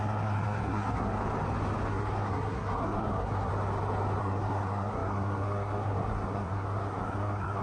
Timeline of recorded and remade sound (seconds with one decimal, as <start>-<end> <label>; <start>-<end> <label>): 0.0-1.2 remade; 1.2-1.9 recorded; 1.9-3.5 remade; 3.5-4.2 recorded; 4.2-7.6 remade